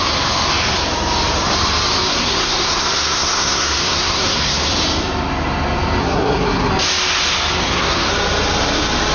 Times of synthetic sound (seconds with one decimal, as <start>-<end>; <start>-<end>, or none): 2.1-4.7; 6.0-6.7; 7.6-8.1